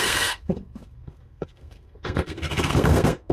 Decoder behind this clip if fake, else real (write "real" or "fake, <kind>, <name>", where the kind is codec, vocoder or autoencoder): fake, codec, SNAC